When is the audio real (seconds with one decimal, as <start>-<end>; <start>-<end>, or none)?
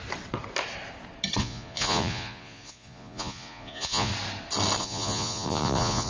0.0-1.4; 4.1-4.8